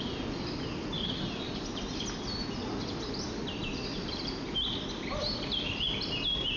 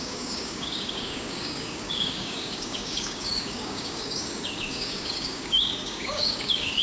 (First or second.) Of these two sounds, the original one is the first